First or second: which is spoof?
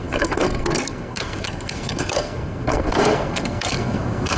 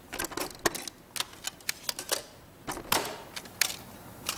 first